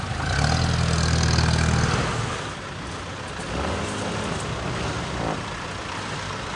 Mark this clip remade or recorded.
recorded